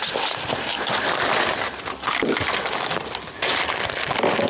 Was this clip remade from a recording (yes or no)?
no